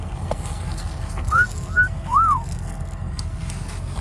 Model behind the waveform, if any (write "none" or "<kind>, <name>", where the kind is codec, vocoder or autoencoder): codec, SNAC